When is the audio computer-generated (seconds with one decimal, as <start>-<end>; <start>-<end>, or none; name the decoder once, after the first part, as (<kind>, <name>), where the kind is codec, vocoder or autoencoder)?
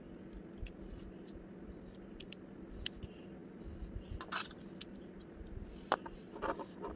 none